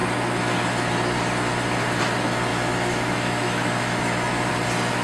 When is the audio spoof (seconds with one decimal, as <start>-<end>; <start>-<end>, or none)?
2.5-4.5